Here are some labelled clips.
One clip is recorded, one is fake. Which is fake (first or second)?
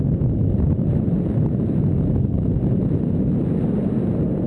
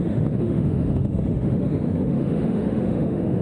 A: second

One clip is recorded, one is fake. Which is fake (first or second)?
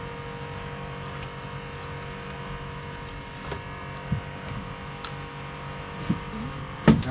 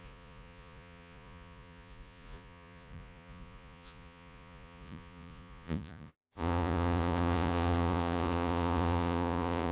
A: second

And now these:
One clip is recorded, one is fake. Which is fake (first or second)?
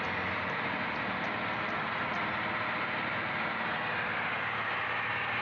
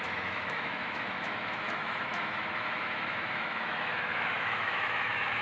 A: second